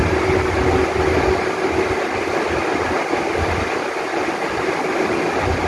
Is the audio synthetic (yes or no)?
no